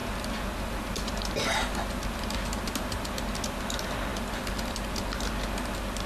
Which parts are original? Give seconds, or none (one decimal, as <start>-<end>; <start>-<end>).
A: 0.0-6.1